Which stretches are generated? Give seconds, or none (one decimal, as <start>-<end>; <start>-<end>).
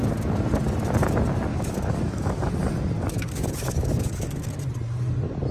1.5-2.5; 3.0-4.5